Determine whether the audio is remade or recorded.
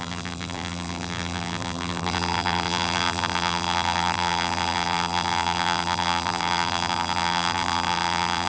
remade